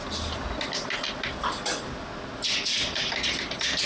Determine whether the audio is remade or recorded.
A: recorded